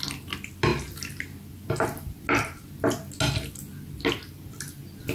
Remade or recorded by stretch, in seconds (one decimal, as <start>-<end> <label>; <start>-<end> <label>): 0.0-5.1 recorded